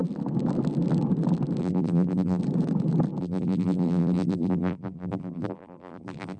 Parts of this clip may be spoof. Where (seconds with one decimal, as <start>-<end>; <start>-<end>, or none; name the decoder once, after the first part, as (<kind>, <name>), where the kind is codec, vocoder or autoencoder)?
1.6-2.4 (vocoder, BigVGAN v2); 3.2-6.4